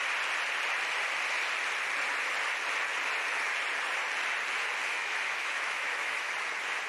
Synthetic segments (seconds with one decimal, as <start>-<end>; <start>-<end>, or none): 5.0-6.3